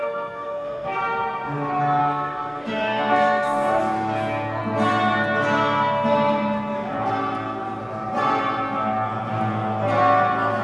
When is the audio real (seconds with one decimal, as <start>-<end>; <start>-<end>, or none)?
1.0-2.0; 3.8-10.6